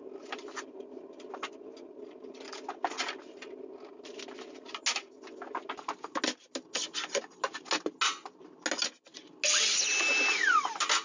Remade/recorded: recorded